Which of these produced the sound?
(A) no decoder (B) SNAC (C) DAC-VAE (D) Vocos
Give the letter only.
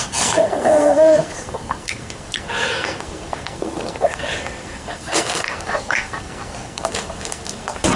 B